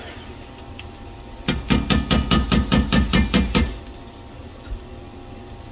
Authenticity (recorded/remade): recorded